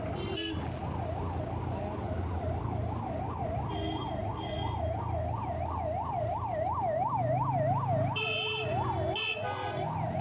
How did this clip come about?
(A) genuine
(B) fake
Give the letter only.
A